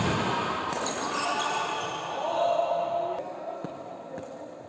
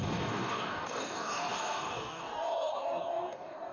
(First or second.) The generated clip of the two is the second